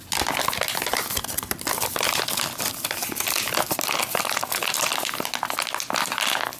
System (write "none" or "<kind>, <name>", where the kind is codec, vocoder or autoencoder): none